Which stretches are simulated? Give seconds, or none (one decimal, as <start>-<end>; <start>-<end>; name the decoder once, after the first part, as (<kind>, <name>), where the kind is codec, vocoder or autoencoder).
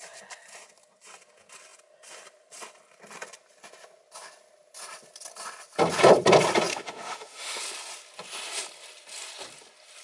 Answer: 6.7-7.6 (autoencoder, DAC-VAE)